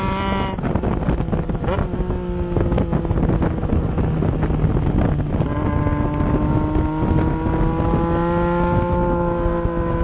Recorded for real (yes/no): yes